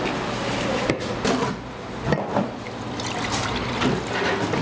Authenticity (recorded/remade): recorded